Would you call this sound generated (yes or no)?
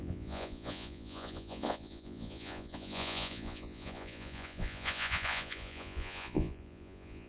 yes